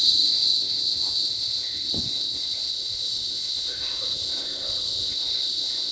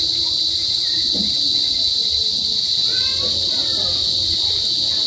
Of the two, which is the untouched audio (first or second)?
second